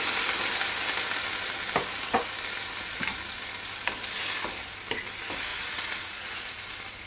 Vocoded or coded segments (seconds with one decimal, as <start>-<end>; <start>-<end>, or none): 5.5-6.6